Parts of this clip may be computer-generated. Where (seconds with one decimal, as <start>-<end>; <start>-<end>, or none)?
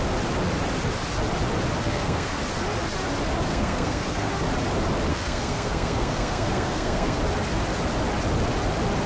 1.8-2.4; 3.5-4.3; 5.1-7.2